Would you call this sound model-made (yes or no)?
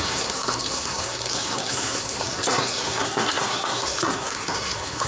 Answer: yes